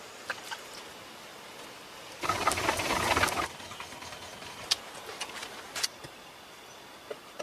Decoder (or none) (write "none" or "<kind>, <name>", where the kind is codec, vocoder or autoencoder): none